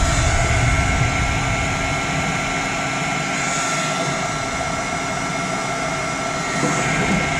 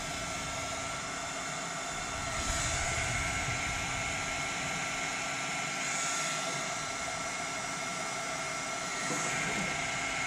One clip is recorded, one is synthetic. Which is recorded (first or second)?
first